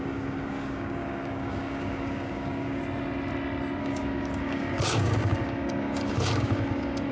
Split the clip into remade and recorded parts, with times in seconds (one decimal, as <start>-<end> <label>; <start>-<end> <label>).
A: 0.0-2.8 remade; 2.8-3.8 recorded; 3.8-7.1 remade